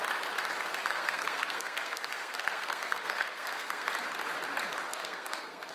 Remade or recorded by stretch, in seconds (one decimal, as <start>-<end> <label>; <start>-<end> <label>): 0.0-0.7 recorded; 0.7-3.9 remade; 3.9-4.9 recorded; 4.9-5.7 remade